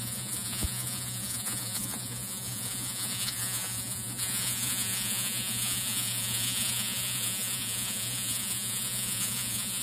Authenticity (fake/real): fake